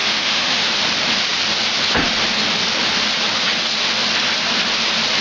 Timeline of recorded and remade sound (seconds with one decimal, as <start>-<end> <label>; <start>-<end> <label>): 0.0-0.7 remade; 0.7-5.2 recorded